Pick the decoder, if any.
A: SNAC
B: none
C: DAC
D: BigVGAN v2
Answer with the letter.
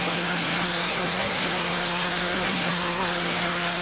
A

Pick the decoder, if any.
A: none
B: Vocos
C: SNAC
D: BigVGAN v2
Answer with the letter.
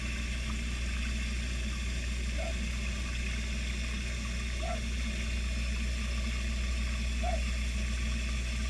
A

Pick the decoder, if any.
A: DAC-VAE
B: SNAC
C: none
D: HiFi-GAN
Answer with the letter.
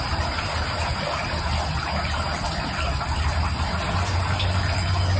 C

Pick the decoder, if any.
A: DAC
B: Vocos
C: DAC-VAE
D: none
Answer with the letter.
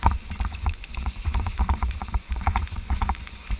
B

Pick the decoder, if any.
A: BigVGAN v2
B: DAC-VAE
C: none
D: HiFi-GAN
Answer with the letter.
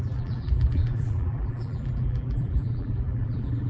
A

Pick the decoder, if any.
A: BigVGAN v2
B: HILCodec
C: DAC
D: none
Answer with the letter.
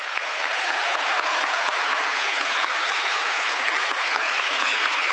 B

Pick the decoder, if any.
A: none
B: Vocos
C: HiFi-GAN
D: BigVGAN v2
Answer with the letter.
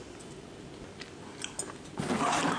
A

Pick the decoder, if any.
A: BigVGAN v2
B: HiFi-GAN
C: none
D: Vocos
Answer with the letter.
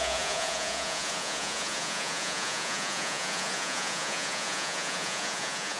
D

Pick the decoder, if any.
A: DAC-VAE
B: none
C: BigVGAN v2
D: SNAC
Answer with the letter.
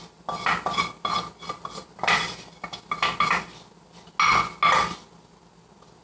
B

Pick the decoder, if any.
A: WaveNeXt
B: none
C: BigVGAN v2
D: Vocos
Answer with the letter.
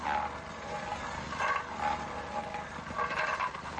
B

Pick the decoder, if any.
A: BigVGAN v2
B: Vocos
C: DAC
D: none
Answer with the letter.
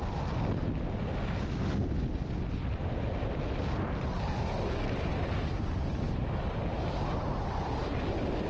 D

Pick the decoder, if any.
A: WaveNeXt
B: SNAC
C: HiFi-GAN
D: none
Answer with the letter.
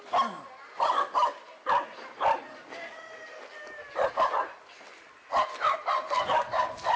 D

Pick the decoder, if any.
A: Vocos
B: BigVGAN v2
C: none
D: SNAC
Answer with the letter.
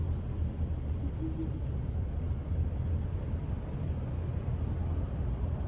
C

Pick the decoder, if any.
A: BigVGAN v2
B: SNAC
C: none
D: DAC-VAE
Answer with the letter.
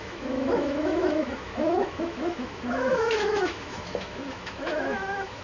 D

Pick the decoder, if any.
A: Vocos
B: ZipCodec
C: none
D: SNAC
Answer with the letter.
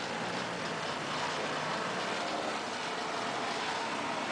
C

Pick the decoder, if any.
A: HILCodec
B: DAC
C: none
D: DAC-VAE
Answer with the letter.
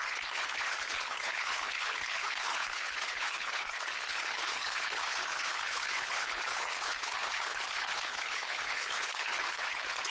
A